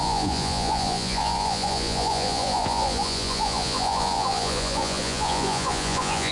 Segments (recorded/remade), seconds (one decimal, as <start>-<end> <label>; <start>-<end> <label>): 0.0-6.3 remade